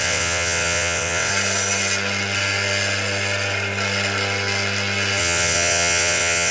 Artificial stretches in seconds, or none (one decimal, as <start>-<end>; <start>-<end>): 0.0-1.3; 5.2-6.5